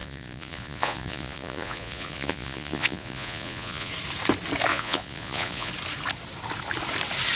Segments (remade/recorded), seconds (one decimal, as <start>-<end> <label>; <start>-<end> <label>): 0.0-3.9 remade; 3.9-4.7 recorded; 4.7-5.7 remade; 5.7-7.4 recorded